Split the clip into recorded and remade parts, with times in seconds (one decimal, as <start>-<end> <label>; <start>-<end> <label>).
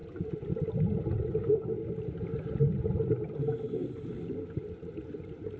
0.0-3.8 recorded; 3.8-5.6 remade